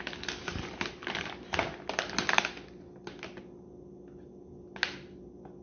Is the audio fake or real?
real